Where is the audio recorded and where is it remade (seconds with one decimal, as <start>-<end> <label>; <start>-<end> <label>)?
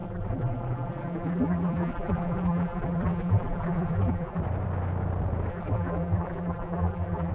0.0-4.4 remade; 4.4-5.5 recorded; 5.5-7.3 remade